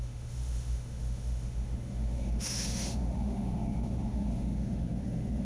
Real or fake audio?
fake